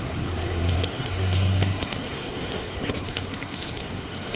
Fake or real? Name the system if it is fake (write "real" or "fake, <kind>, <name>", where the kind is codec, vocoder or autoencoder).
fake, codec, SNAC